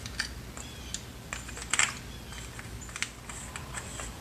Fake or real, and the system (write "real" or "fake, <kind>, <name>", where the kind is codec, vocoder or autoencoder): real